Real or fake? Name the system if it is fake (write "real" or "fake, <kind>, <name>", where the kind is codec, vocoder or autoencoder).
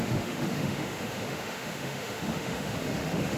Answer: fake, autoencoder, DAC-VAE